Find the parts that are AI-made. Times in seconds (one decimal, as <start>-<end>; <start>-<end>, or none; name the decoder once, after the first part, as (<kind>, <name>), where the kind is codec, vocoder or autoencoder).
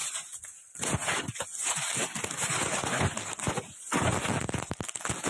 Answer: none